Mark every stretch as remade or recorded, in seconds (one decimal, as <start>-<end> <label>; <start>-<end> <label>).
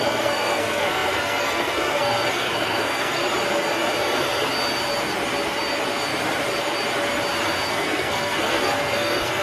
0.0-3.2 remade; 3.2-7.7 recorded; 7.7-9.4 remade